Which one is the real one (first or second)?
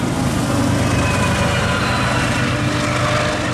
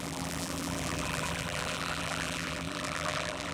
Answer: first